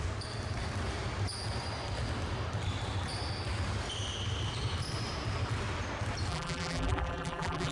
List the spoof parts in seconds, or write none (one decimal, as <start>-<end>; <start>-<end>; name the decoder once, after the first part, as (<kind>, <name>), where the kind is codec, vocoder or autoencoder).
6.3-7.7 (vocoder, BigVGAN v2)